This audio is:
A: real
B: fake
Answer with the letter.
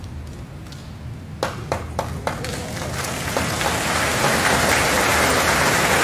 A